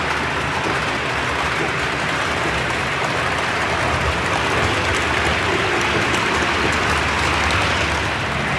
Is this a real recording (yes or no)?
yes